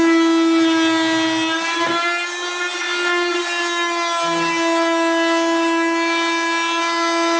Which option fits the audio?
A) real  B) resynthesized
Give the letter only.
A